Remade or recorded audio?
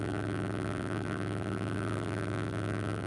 remade